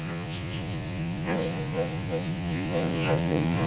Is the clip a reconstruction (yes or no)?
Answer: yes